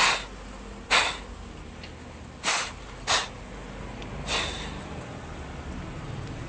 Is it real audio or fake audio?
real